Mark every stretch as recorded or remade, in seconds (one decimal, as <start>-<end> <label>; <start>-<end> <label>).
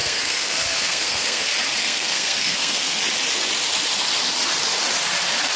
0.0-1.4 remade; 1.4-1.8 recorded; 1.8-3.0 remade; 3.0-5.6 recorded